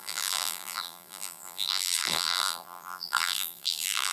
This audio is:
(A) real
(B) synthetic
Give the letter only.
B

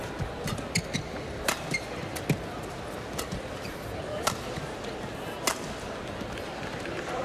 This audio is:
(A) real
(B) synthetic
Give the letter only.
A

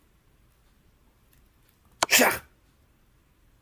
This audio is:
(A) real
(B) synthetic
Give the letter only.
A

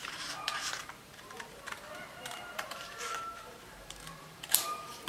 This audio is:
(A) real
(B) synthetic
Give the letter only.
B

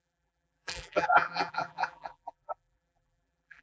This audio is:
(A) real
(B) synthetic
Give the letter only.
B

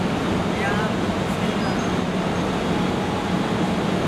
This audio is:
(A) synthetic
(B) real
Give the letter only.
B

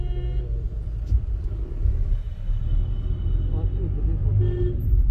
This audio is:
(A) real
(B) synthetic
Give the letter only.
A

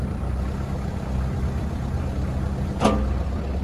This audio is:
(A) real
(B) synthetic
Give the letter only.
A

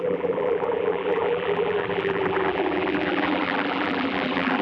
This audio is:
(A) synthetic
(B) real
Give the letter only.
A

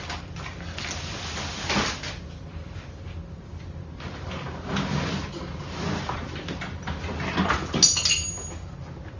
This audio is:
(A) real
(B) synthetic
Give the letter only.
A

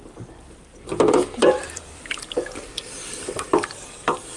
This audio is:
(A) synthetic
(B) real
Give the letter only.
A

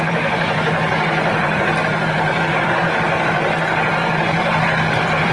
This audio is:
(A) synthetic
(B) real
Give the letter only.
A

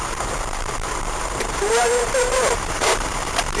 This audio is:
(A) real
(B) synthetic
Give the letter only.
B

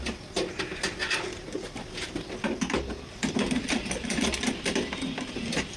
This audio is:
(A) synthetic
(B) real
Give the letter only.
A